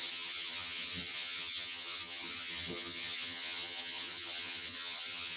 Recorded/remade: remade